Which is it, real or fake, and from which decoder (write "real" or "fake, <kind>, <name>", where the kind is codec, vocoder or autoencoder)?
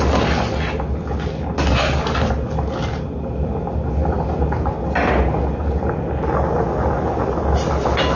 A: real